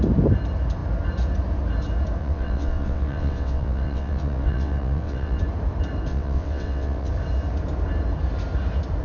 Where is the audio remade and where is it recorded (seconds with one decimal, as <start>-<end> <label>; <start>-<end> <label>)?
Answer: 0.0-2.2 recorded; 2.2-5.4 remade; 5.4-6.1 recorded; 6.1-7.1 remade; 7.1-9.0 recorded